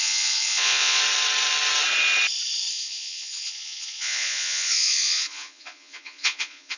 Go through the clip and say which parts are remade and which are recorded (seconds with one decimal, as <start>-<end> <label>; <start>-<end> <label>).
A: 0.0-1.0 remade; 1.0-2.7 recorded; 2.7-6.8 remade

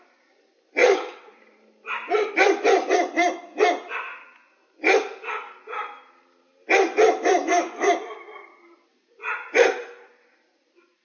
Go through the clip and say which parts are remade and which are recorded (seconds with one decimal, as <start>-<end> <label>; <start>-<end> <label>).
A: 0.0-0.8 recorded; 0.8-1.4 remade; 1.4-11.0 recorded

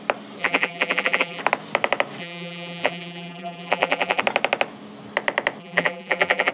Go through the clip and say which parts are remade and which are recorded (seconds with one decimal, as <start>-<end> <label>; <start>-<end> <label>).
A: 0.0-0.4 recorded; 0.4-1.4 remade; 1.4-2.2 recorded; 2.2-4.2 remade; 4.2-5.6 recorded; 5.6-6.5 remade

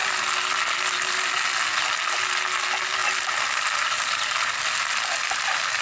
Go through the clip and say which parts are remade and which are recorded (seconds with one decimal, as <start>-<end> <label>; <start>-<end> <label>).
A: 0.0-5.8 recorded